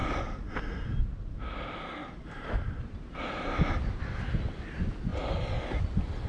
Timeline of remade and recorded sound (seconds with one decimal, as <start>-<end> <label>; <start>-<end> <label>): 0.0-2.0 recorded; 2.0-3.5 remade; 3.5-6.3 recorded